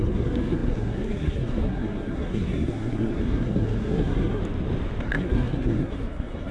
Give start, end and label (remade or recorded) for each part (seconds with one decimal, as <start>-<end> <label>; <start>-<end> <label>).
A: 0.0-4.4 remade; 4.4-5.0 recorded; 5.0-6.5 remade